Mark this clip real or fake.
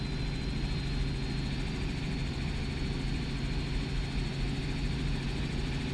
real